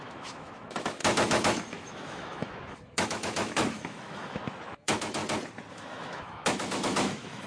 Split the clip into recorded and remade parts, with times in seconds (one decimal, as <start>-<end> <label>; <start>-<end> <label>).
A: 0.0-5.2 remade; 5.2-5.7 recorded; 5.7-7.5 remade